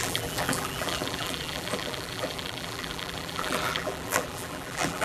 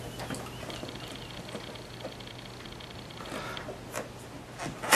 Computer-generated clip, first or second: first